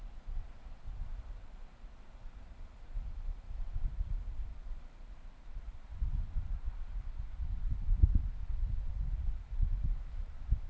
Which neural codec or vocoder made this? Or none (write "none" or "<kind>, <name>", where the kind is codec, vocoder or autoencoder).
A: vocoder, BigVGAN v2